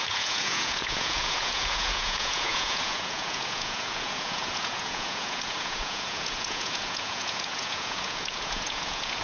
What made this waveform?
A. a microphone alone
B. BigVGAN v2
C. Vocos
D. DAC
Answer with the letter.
C